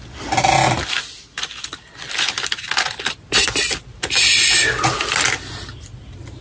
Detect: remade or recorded recorded